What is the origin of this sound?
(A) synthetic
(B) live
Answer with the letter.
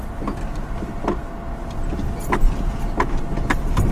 B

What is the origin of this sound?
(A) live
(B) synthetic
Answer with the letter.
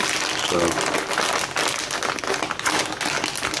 A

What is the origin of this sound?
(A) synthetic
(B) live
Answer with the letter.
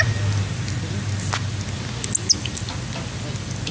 B